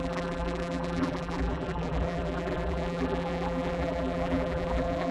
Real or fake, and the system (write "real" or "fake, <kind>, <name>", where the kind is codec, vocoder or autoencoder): fake, vocoder, BigVGAN v2